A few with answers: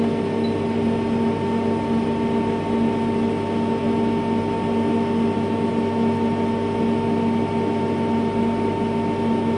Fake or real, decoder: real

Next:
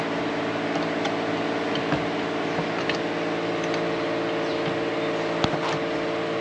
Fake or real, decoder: real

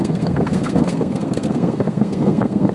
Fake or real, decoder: fake, codec, SNAC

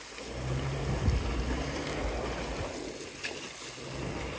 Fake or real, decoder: real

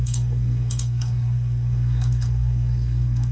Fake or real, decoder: fake, codec, SNAC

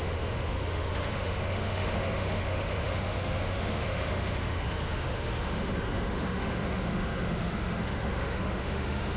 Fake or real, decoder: fake, autoencoder, DAC-VAE